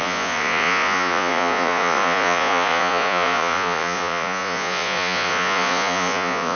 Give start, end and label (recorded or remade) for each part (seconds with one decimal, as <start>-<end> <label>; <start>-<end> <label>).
0.0-6.5 remade